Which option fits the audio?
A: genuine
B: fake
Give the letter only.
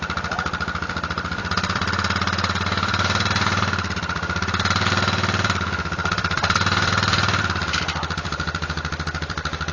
B